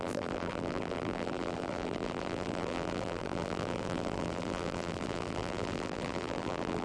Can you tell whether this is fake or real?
fake